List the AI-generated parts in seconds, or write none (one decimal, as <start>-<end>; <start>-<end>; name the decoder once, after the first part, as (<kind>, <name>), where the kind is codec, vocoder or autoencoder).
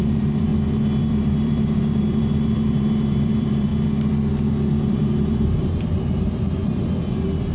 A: 0.0-0.5 (vocoder, BigVGAN v2); 1.0-3.7; 4.8-6.6